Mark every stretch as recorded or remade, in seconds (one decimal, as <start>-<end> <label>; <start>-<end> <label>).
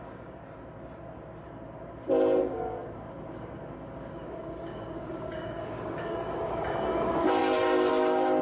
0.0-0.4 remade; 0.4-2.4 recorded; 2.4-8.4 remade